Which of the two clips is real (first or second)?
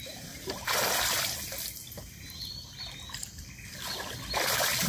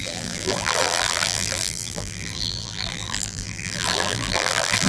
first